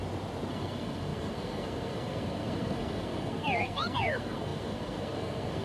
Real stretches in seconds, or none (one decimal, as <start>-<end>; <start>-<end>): 0.0-0.5